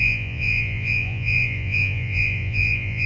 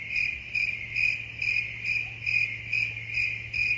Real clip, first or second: second